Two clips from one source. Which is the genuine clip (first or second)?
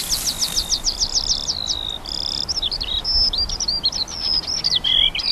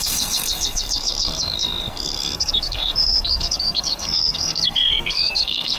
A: first